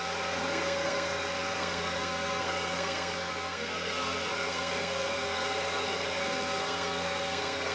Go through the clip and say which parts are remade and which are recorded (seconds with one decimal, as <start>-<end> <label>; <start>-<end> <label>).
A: 0.0-7.7 remade